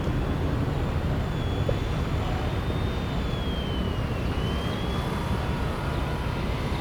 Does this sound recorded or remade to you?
recorded